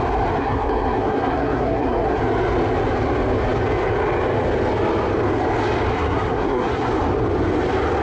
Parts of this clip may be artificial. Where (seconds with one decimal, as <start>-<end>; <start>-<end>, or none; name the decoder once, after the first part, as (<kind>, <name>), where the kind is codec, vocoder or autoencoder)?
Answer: 0.4-2.2 (codec, SNAC); 5.9-6.9